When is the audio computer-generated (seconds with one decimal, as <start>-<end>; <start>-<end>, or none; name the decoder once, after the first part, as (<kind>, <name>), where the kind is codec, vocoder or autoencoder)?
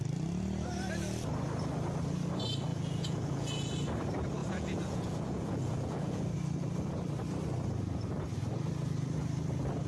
2.7-3.7 (vocoder, Vocos); 4.4-6.2